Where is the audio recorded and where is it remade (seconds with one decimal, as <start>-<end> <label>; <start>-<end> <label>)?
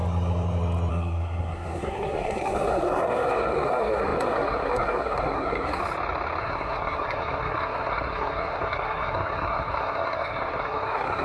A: 0.0-0.9 recorded; 0.9-5.8 remade; 5.8-6.4 recorded; 6.4-11.2 remade